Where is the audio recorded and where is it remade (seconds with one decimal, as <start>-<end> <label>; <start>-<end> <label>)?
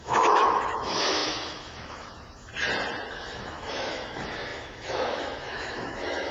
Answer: 0.0-2.5 remade; 2.5-3.1 recorded; 3.1-6.3 remade